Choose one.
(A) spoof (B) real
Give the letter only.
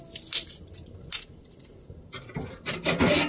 B